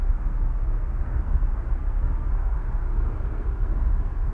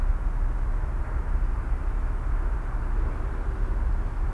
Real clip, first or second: second